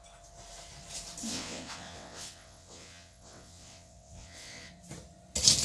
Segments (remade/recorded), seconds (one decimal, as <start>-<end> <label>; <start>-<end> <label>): 0.0-1.3 recorded; 1.3-4.7 remade; 4.7-5.6 recorded